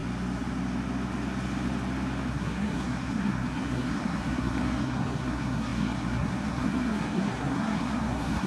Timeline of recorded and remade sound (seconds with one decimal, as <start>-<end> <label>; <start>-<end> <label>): 0.0-2.3 recorded; 2.3-8.5 remade